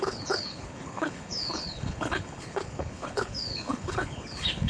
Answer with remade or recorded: remade